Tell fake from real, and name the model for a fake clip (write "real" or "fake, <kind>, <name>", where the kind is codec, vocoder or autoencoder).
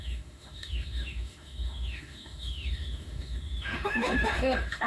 fake, autoencoder, DAC-VAE